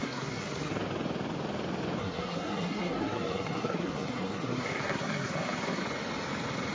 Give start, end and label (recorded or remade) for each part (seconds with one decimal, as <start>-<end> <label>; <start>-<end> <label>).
0.0-0.7 remade; 0.7-2.0 recorded; 2.0-5.8 remade; 5.8-6.7 recorded